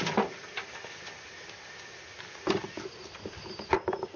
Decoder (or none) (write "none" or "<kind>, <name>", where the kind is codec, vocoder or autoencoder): none